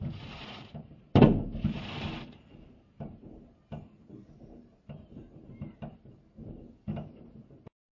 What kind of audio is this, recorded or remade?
remade